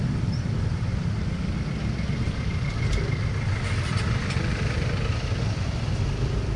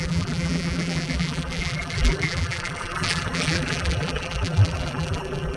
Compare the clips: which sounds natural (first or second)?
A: first